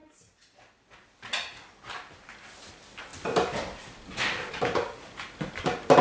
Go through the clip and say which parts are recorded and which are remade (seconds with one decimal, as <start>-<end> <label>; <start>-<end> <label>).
0.0-6.0 recorded